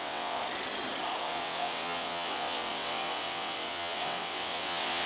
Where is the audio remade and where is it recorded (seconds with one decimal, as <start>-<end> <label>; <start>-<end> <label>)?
0.0-0.4 remade; 0.4-1.2 recorded; 1.2-5.1 remade